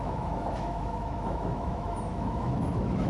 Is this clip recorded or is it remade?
remade